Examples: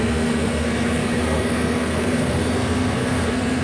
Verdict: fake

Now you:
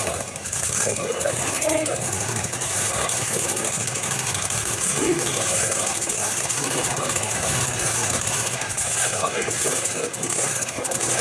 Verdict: fake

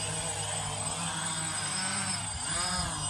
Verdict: real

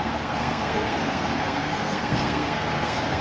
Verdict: fake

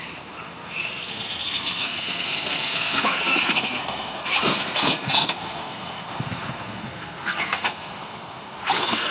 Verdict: fake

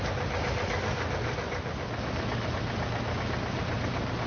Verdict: real